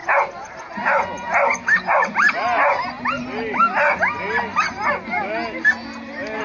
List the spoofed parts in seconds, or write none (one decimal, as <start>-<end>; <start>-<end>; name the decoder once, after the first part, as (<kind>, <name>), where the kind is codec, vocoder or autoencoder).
none